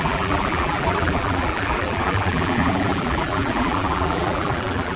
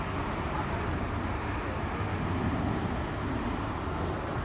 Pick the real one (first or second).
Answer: second